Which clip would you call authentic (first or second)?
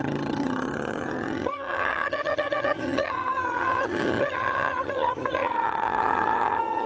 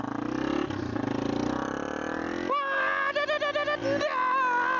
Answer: second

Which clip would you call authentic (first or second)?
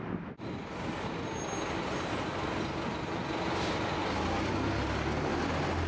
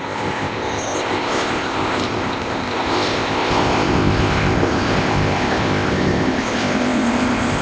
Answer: first